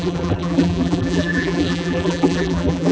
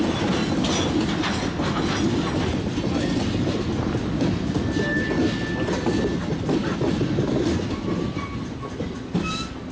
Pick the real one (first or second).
second